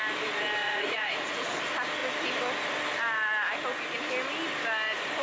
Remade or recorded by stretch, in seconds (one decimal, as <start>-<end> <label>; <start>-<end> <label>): 0.0-0.6 recorded; 0.6-1.6 remade; 1.6-5.2 recorded